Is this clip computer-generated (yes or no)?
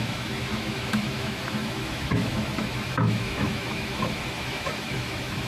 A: yes